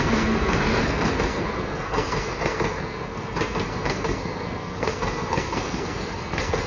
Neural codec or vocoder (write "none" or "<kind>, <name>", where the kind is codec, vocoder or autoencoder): codec, SNAC